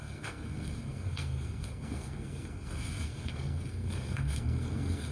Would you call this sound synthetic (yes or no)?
yes